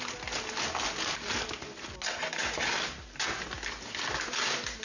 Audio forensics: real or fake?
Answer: real